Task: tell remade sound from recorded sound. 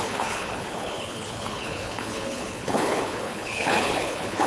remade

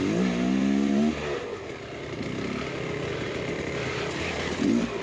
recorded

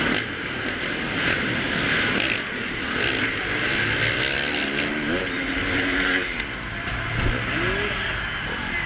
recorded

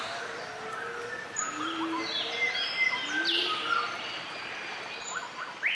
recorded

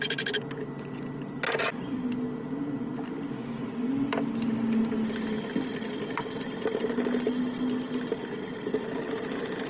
recorded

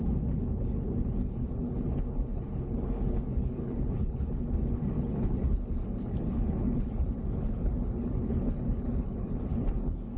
remade